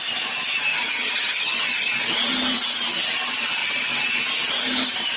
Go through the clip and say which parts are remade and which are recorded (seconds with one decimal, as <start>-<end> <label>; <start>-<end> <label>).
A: 0.0-0.7 recorded; 0.7-1.9 remade; 1.9-5.2 recorded